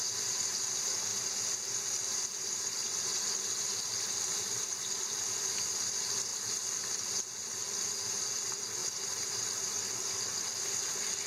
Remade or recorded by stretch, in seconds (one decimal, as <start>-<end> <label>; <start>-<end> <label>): 0.0-11.3 recorded